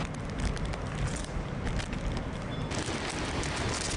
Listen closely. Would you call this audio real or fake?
real